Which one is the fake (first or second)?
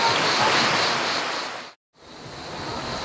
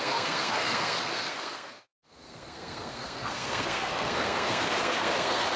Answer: second